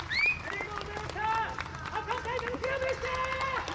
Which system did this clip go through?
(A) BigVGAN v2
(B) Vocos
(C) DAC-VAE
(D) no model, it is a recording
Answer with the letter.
D